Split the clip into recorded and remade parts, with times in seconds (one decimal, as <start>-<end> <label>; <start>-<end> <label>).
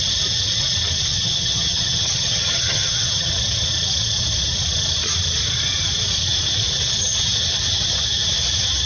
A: 0.0-1.1 recorded; 1.1-3.3 remade; 3.3-8.9 recorded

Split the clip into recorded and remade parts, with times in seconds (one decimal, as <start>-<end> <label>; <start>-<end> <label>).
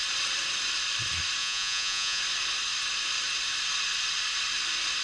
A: 0.0-1.4 recorded; 1.4-2.2 remade; 2.2-5.0 recorded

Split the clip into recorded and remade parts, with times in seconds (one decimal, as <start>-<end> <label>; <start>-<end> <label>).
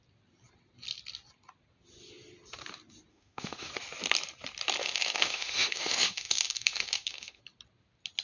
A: 0.0-3.1 recorded; 3.1-3.7 remade; 3.7-4.8 recorded; 4.8-7.4 remade; 7.4-8.2 recorded